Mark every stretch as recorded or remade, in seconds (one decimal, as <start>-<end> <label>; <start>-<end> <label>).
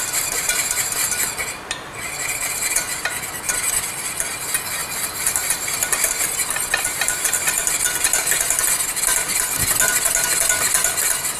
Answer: 0.0-11.4 recorded